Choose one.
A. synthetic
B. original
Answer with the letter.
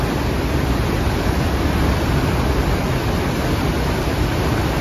B